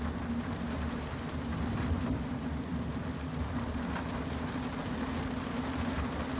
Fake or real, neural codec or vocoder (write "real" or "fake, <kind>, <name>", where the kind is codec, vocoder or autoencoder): real